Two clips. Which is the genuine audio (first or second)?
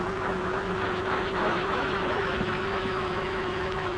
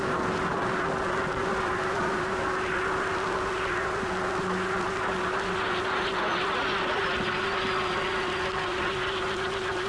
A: second